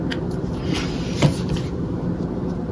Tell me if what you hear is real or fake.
real